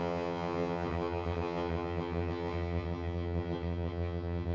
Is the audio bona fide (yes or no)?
no